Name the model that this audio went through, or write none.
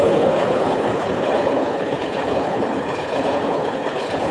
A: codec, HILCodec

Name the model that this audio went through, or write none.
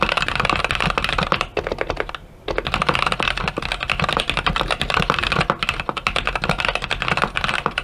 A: none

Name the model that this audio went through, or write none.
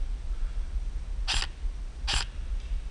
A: none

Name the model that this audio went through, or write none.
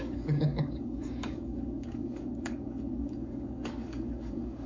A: codec, DAC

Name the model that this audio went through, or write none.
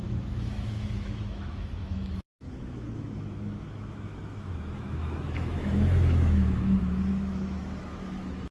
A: autoencoder, DAC-VAE